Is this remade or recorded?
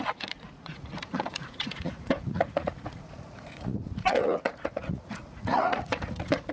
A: remade